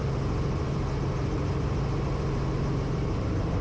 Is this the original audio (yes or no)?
yes